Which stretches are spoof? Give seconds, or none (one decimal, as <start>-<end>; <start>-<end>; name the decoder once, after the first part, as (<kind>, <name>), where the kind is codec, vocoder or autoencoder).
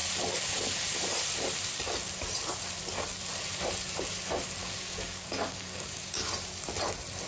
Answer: 4.6-6.3 (codec, DAC)